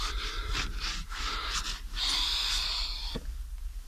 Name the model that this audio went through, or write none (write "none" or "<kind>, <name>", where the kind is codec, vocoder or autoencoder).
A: none